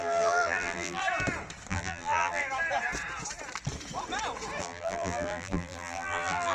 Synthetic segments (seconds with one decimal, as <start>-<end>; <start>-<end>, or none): 0.0-1.0; 1.7-2.4; 4.6-6.5